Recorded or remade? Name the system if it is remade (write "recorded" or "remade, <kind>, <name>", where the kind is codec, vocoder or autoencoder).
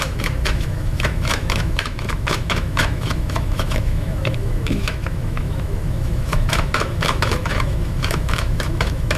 remade, autoencoder, DAC-VAE